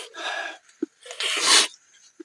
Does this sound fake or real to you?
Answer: real